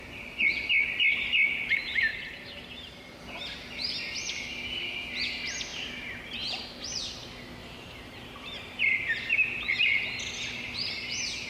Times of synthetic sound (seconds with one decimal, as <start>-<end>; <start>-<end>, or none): 2.1-3.2; 5.7-6.6; 7.6-9.3